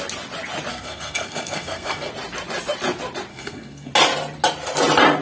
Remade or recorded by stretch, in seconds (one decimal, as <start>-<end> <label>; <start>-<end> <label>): 0.0-0.7 recorded; 0.7-2.1 remade; 2.1-3.3 recorded; 3.3-3.9 remade; 3.9-5.2 recorded